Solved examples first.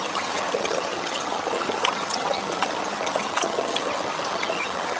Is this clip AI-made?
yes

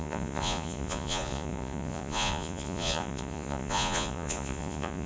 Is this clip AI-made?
yes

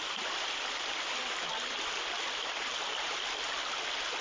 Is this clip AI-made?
no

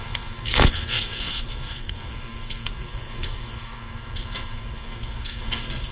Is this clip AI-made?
yes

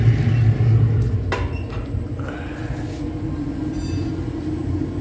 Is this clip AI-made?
no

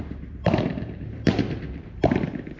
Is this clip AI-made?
yes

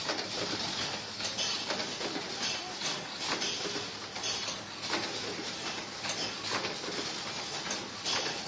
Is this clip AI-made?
no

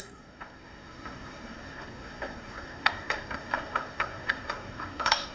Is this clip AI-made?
yes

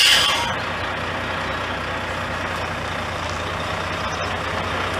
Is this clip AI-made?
no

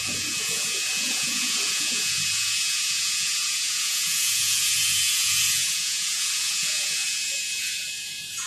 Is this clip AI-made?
yes